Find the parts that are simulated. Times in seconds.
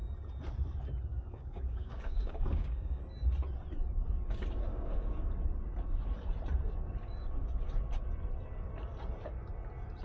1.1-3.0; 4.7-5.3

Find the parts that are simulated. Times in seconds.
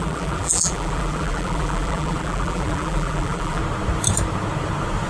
0.0-3.6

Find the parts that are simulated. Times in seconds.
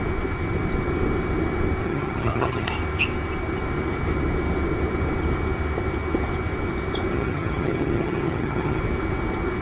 1.8-2.7; 7.1-8.8